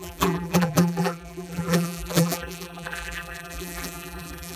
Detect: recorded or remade remade